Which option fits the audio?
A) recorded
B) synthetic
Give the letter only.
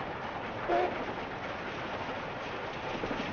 A